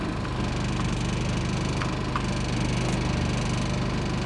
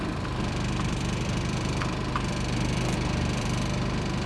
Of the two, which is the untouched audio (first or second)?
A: first